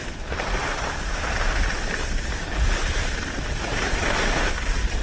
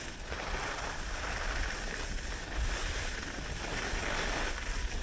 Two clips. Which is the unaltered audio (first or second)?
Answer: second